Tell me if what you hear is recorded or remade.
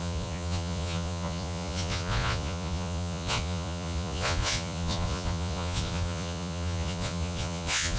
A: remade